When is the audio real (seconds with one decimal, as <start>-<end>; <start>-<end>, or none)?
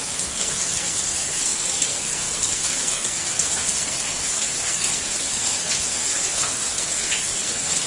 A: none